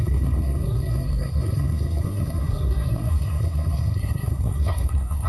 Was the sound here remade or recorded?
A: remade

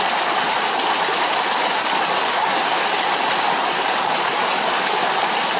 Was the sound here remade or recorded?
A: recorded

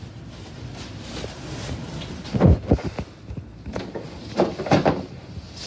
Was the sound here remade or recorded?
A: recorded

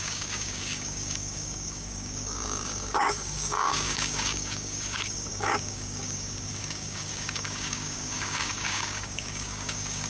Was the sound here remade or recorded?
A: remade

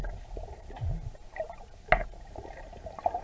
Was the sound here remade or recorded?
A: recorded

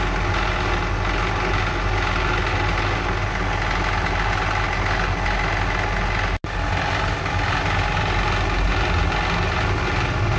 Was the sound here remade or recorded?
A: recorded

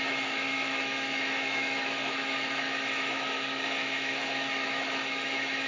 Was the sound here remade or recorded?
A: remade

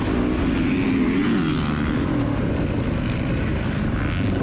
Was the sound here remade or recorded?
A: recorded